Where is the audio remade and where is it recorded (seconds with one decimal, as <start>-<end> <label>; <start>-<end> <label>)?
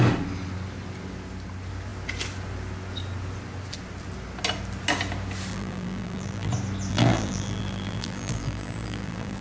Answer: 0.0-5.5 recorded; 5.5-6.5 remade; 6.5-6.9 recorded; 6.9-9.4 remade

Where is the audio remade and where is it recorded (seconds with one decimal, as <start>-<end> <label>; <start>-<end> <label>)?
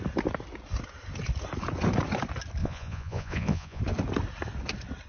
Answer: 0.0-2.6 recorded; 2.6-3.8 remade; 3.8-5.1 recorded